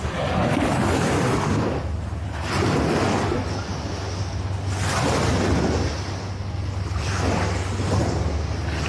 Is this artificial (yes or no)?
no